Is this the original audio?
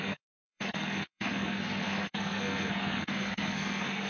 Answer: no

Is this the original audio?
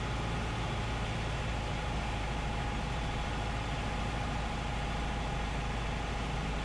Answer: yes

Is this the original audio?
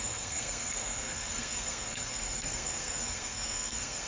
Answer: no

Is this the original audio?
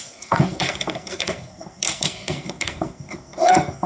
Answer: no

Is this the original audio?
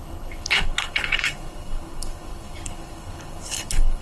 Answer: no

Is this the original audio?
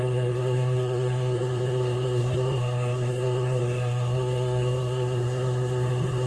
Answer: no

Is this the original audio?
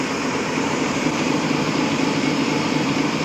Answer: no